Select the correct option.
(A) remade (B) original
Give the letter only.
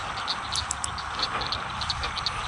B